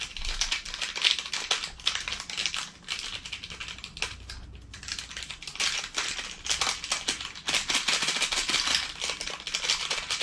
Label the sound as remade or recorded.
recorded